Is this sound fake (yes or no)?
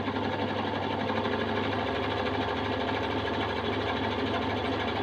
no